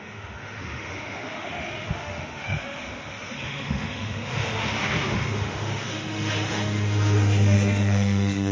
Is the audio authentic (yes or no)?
no